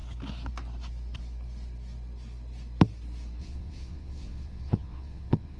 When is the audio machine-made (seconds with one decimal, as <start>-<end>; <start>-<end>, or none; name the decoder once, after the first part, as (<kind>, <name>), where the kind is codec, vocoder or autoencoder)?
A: 3.4-5.6 (vocoder, Vocos)